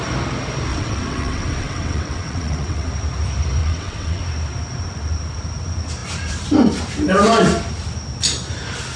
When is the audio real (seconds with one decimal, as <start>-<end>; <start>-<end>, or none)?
0.0-0.7; 2.9-3.6; 4.2-9.0